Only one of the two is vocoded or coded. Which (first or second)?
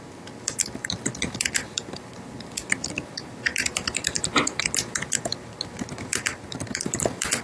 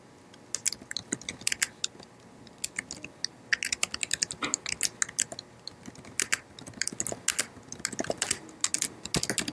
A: first